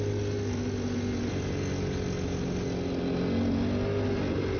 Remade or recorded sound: recorded